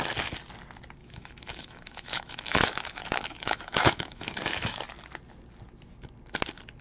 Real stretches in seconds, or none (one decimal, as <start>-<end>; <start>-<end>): 0.0-1.0; 4.8-6.8